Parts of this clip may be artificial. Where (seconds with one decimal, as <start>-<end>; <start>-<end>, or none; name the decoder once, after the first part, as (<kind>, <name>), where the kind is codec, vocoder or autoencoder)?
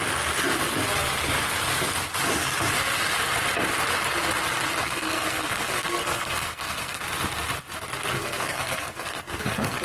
4.8-7.0 (codec, SNAC); 8.2-9.8